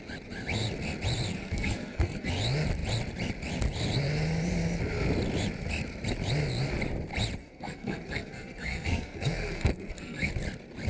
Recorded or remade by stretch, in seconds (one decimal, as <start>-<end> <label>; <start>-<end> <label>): 0.0-1.3 recorded; 1.3-2.3 remade; 2.3-7.4 recorded; 7.4-10.3 remade; 10.3-10.9 recorded